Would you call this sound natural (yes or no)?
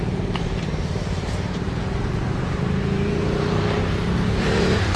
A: no